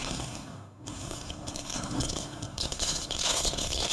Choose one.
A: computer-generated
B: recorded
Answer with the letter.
A